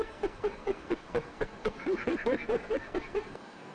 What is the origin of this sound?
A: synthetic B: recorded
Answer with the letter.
A